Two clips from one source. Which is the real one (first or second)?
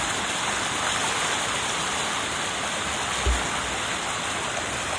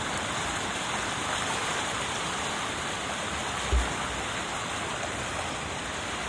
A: first